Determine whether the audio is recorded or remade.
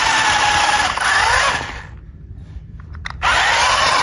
recorded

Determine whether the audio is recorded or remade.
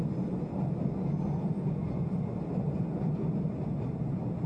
recorded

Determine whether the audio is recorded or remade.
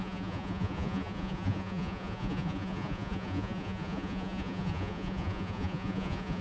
remade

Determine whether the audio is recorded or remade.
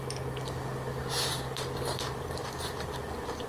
recorded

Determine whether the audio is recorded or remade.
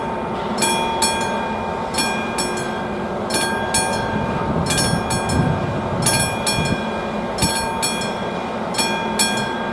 recorded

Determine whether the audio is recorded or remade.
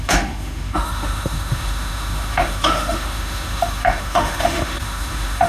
remade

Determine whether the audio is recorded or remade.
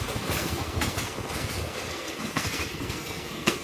remade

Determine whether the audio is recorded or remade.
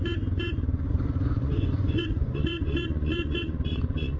remade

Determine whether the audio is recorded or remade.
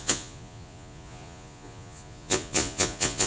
remade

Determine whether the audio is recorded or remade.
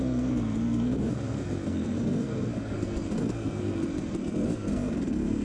remade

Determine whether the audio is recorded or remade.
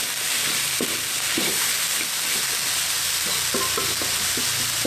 recorded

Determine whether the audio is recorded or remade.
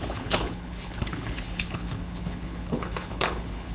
remade